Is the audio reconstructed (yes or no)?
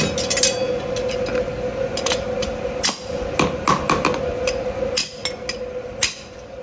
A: no